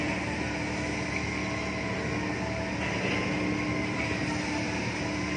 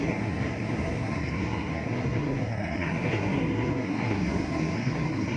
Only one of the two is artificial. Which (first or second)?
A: second